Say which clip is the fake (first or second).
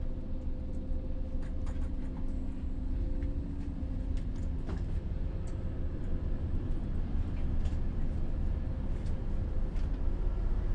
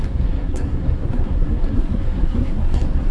second